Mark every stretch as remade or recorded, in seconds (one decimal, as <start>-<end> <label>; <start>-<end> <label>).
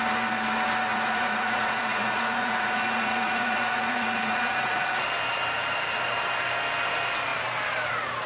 0.0-0.9 recorded; 0.9-5.0 remade; 5.0-8.3 recorded